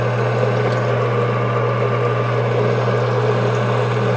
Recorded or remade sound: recorded